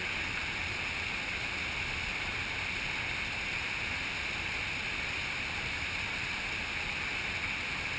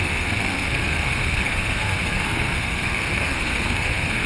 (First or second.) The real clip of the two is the first